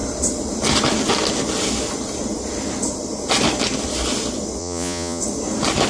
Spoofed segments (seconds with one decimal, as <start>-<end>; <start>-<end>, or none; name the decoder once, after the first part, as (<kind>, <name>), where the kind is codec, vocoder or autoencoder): 4.6-5.2 (vocoder, Vocos)